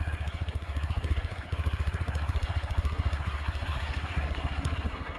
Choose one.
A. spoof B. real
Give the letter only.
A